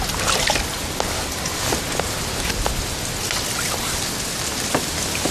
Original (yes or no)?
yes